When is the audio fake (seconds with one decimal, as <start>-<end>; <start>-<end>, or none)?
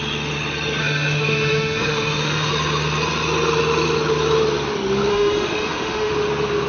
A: 0.8-2.5; 5.1-6.1